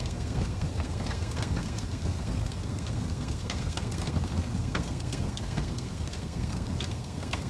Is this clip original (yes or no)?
no